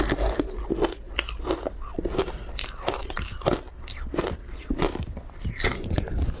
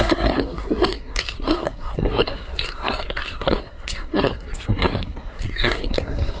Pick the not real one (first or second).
second